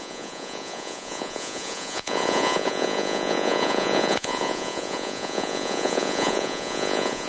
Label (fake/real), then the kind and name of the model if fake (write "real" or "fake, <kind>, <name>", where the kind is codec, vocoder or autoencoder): fake, vocoder, Vocos